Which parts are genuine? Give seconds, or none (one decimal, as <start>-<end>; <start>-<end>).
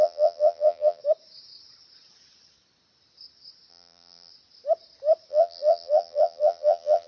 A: 1.0-3.7; 4.3-5.3